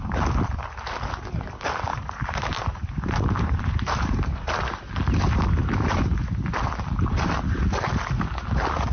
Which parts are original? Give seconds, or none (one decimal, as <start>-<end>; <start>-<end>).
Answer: 0.0-1.9; 4.5-8.9